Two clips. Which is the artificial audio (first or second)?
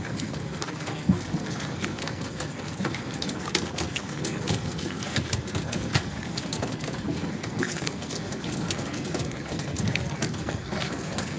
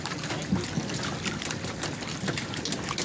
first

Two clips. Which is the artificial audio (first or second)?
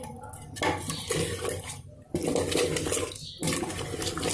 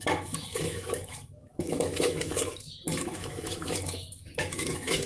second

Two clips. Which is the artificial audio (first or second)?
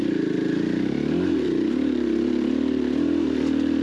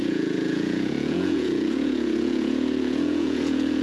second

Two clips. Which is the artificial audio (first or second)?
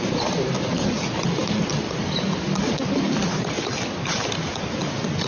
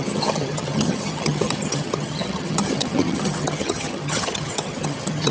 second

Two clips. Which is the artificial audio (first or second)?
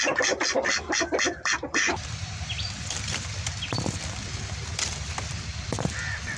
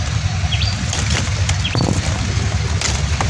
first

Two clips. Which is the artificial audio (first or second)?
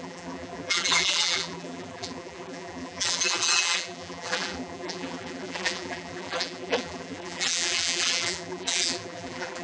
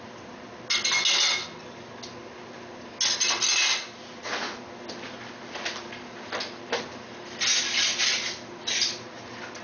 first